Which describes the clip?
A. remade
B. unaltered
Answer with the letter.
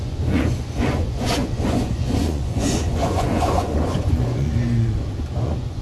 A